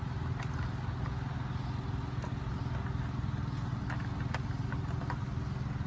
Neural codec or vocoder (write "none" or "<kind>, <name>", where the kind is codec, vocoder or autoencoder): none